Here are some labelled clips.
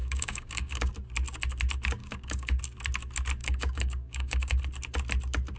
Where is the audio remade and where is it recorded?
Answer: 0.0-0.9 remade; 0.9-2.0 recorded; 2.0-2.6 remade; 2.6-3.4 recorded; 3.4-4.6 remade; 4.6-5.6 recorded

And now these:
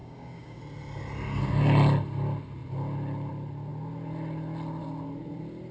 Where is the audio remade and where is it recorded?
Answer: 0.0-0.6 remade; 0.6-5.7 recorded

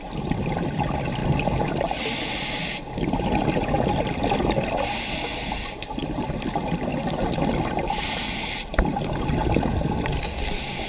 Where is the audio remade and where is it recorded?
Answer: 0.0-10.9 recorded

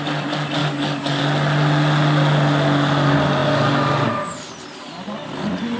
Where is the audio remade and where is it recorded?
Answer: 0.0-0.6 recorded; 0.6-1.2 remade; 1.2-5.8 recorded

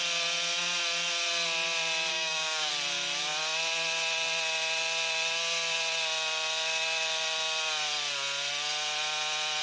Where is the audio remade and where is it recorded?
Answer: 0.0-2.1 recorded; 2.1-2.7 remade; 2.7-9.6 recorded

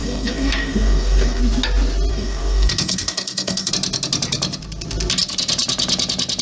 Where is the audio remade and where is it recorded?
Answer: 0.0-1.4 remade; 1.4-2.1 recorded; 2.1-3.7 remade; 3.7-6.4 recorded